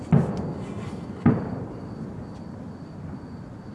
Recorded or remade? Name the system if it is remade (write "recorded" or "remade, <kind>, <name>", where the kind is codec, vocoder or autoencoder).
recorded